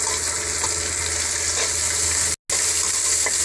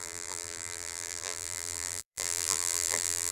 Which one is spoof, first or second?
second